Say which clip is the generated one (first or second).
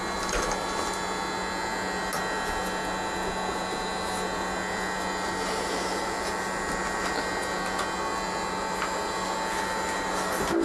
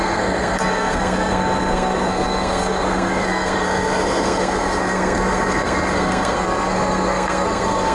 second